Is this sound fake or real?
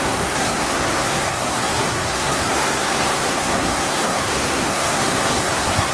fake